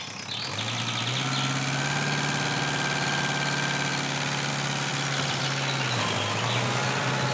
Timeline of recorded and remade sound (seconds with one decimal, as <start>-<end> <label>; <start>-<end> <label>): 0.0-7.3 recorded

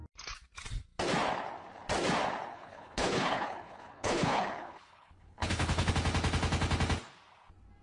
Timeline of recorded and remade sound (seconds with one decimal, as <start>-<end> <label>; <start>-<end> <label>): 0.0-2.5 recorded; 2.5-5.9 remade; 5.9-7.8 recorded

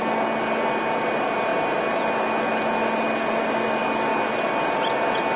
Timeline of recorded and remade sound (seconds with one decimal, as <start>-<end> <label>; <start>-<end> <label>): 0.0-5.4 recorded

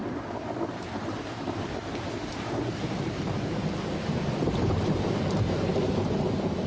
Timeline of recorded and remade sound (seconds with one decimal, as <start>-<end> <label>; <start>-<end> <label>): 0.0-6.7 remade

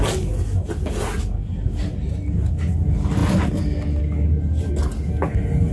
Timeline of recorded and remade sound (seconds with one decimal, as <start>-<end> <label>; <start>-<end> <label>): 0.0-5.7 recorded

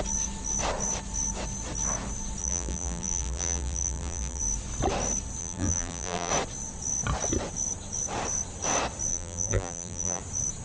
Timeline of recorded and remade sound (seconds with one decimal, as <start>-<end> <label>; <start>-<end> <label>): 0.0-2.4 recorded; 2.4-4.4 remade; 4.4-5.4 recorded; 5.4-6.3 remade; 6.3-9.1 recorded; 9.1-10.2 remade; 10.2-10.6 recorded

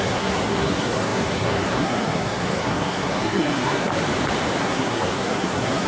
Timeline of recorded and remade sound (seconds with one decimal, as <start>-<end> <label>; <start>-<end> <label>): 0.0-3.9 remade; 3.9-4.6 recorded; 4.6-5.9 remade